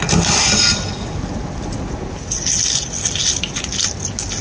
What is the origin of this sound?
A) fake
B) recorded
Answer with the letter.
B